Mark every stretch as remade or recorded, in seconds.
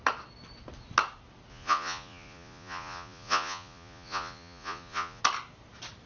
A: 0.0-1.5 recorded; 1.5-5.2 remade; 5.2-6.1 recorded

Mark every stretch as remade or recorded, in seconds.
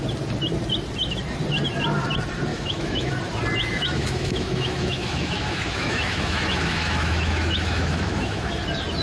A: 0.0-2.5 recorded; 2.5-3.1 remade; 3.1-3.6 recorded; 3.6-8.5 remade; 8.5-9.0 recorded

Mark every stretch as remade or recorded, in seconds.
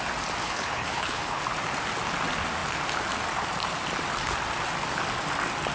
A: 0.0-0.4 recorded; 0.4-1.4 remade; 1.4-5.7 recorded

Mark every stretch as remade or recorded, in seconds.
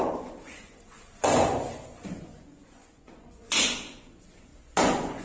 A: 0.0-5.2 remade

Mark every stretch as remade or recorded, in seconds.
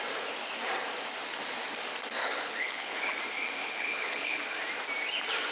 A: 0.0-2.2 recorded; 2.2-3.2 remade; 3.2-3.6 recorded; 3.6-4.4 remade; 4.4-5.5 recorded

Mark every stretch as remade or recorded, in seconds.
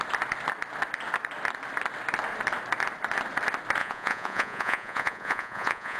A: 0.0-3.8 recorded; 3.8-6.0 remade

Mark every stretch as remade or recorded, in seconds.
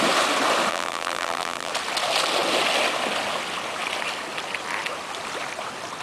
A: 0.0-0.7 recorded; 0.7-1.7 remade; 1.7-6.0 recorded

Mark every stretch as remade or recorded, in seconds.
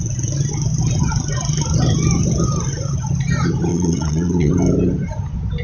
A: 0.0-3.7 recorded; 3.7-4.5 remade; 4.5-5.6 recorded